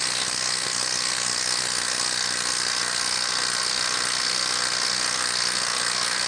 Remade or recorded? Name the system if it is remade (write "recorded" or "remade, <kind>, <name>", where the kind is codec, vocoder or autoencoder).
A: recorded